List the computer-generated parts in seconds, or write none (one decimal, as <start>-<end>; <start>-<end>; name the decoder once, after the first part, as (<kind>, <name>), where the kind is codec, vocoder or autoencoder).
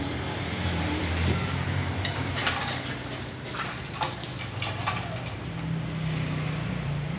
0.0-2.4 (vocoder, BigVGAN v2); 6.7-7.2